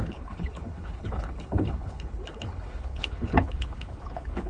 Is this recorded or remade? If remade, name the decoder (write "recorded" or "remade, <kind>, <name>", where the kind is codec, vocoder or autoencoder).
remade, codec, HILCodec